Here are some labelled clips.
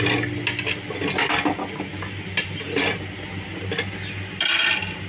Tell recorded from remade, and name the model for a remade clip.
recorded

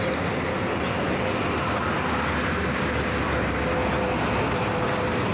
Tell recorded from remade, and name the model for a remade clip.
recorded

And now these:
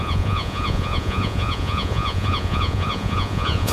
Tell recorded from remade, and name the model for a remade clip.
remade, vocoder, Vocos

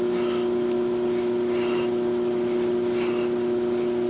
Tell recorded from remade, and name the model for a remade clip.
recorded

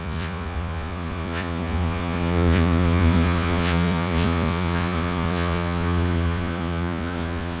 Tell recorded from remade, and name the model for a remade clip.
remade, vocoder, Vocos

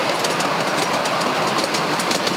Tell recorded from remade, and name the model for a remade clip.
recorded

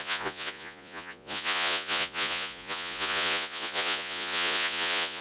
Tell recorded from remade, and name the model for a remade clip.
remade, vocoder, Vocos